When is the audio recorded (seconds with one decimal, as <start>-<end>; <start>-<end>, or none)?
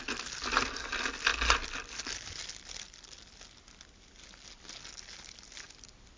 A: 0.0-6.2